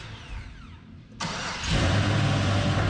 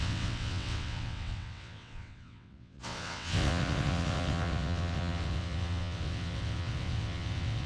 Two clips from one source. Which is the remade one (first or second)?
second